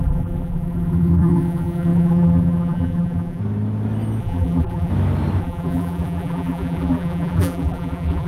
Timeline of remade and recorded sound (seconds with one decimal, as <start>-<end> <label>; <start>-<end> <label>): 0.0-3.4 remade; 3.4-4.2 recorded; 4.2-4.9 remade; 4.9-5.4 recorded; 5.4-8.3 remade